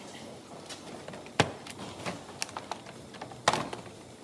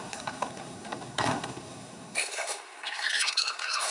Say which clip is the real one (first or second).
first